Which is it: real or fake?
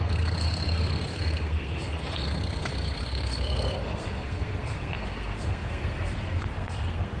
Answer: fake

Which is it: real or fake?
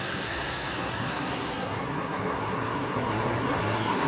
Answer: fake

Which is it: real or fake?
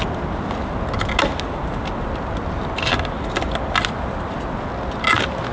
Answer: real